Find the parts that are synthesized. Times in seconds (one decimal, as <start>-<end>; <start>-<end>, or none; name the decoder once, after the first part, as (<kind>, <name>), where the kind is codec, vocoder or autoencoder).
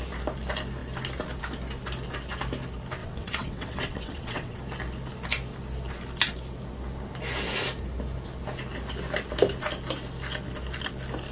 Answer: 3.0-4.6 (vocoder, WaveNeXt)